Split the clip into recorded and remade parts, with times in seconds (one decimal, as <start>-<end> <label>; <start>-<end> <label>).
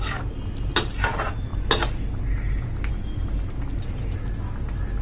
0.0-5.0 recorded